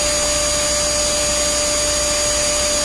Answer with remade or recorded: recorded